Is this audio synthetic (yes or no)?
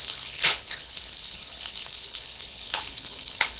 yes